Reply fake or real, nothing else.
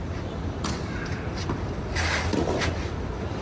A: fake